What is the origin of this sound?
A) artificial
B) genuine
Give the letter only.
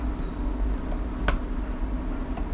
B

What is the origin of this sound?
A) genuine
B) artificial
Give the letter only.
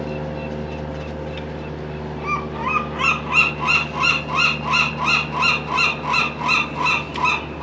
A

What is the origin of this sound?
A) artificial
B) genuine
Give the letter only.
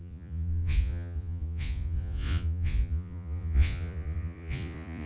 A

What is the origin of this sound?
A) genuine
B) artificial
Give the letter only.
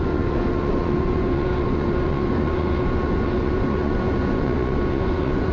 B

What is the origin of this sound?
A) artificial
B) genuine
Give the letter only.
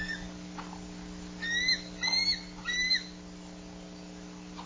B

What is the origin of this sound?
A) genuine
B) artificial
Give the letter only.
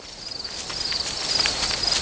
A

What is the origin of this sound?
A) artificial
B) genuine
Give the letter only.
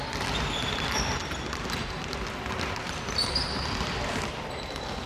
B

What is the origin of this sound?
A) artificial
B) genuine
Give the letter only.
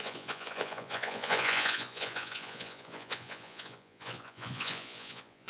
A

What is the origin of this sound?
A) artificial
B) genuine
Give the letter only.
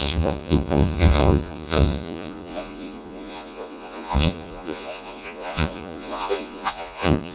A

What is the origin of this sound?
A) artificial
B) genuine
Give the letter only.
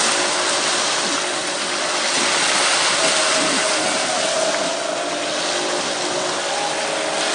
B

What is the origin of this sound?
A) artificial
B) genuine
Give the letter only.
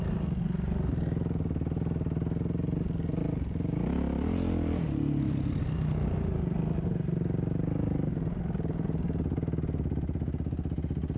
B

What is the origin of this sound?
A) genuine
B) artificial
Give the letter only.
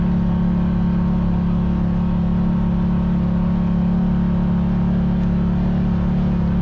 A